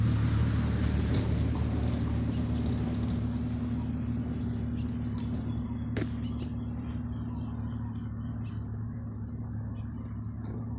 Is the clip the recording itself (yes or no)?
yes